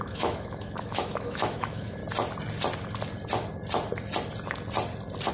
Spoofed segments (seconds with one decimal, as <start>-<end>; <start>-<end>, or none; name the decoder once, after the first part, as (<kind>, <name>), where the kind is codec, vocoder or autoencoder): 0.0-2.0 (autoencoder, DAC-VAE)